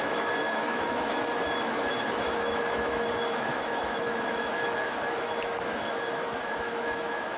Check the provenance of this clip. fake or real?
fake